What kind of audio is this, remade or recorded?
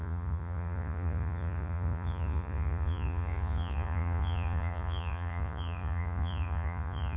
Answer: remade